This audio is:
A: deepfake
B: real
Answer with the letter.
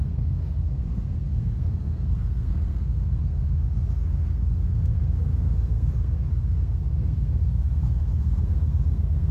A